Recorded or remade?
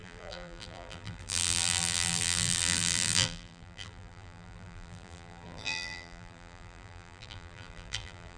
remade